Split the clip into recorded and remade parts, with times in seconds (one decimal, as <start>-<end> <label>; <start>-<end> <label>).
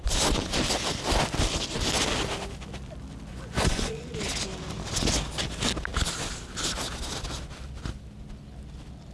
0.0-3.3 recorded; 3.3-4.1 remade; 4.1-9.1 recorded